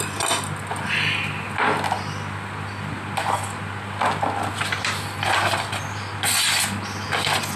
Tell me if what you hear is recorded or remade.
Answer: recorded